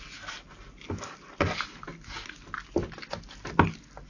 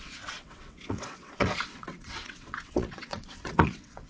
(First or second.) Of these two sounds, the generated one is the second